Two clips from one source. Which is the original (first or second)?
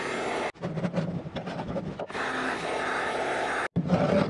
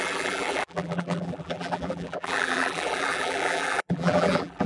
first